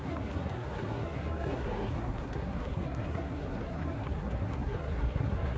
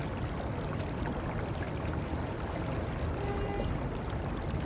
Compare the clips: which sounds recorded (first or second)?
second